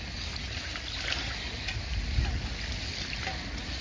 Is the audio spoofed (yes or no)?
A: no